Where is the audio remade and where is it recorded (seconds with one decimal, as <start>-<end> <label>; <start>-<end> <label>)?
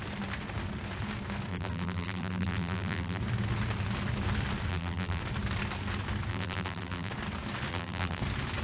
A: 0.0-1.5 recorded; 1.5-3.2 remade; 3.2-4.7 recorded; 4.7-5.2 remade; 5.2-6.3 recorded; 6.3-7.1 remade; 7.1-7.7 recorded; 7.7-8.2 remade; 8.2-8.6 recorded